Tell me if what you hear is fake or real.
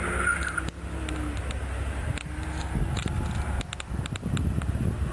real